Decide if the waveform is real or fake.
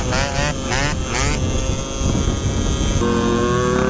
real